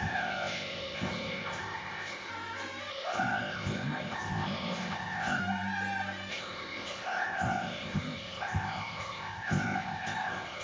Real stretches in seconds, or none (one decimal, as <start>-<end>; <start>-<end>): 2.3-2.9; 5.4-6.3